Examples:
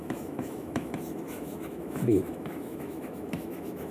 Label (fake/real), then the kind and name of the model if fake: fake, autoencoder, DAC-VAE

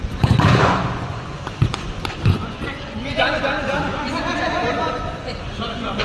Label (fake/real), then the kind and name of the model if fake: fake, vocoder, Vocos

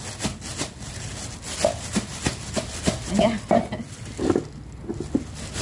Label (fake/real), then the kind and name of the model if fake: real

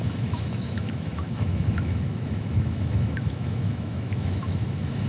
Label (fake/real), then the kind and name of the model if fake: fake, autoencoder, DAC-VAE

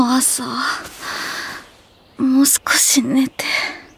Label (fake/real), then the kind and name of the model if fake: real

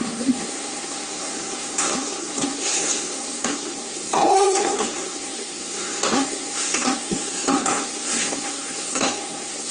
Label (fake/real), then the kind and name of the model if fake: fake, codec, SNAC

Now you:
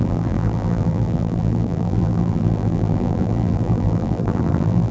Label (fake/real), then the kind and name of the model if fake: fake, vocoder, BigVGAN v2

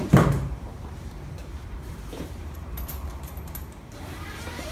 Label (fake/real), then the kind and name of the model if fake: fake, vocoder, BigVGAN v2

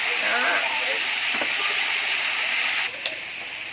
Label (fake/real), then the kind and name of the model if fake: real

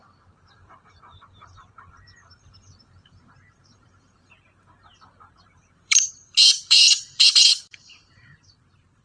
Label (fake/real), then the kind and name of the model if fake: fake, vocoder, BigVGAN v2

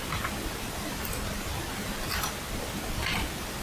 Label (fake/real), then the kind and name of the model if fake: real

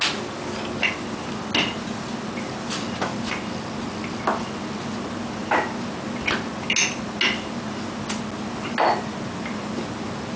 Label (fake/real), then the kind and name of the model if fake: real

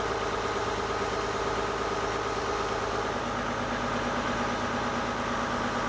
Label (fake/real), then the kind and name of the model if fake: real